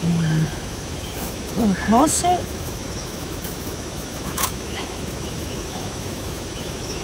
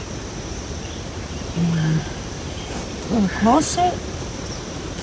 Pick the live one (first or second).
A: second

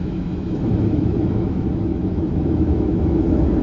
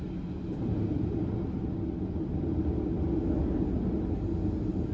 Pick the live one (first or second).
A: second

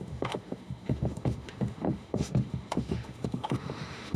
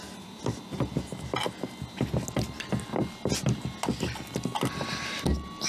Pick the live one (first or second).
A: second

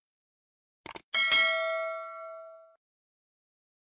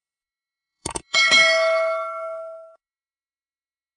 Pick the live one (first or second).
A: first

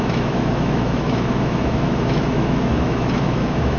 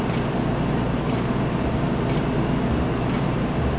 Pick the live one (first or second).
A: second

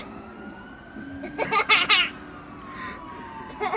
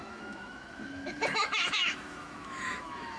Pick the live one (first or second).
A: first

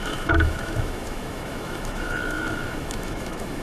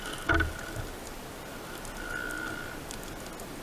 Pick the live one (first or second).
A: second